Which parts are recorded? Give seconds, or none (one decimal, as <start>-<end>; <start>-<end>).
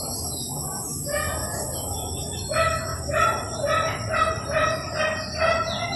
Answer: 0.0-6.0